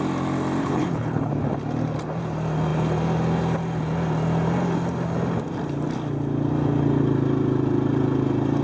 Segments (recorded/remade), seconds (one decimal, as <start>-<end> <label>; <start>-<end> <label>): 0.0-0.6 recorded; 0.6-1.3 remade; 1.3-8.6 recorded